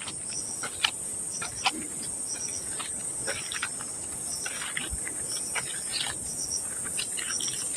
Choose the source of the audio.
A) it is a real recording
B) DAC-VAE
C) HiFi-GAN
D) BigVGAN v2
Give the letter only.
A